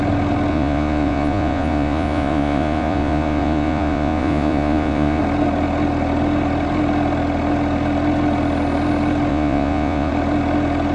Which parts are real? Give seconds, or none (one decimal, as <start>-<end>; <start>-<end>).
0.0-0.5; 5.2-9.3; 10.1-10.9